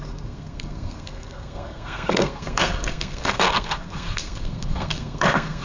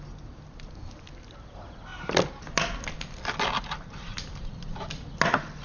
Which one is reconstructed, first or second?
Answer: first